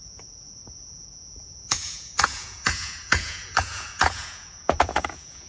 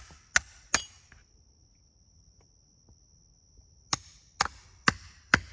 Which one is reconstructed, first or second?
first